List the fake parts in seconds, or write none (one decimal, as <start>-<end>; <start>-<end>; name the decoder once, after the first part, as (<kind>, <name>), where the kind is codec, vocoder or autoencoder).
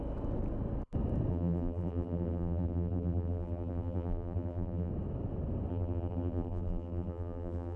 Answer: 1.3-4.9 (vocoder, BigVGAN v2); 5.7-7.8